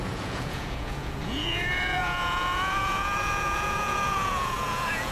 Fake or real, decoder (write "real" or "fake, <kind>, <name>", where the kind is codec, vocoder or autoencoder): fake, vocoder, Vocos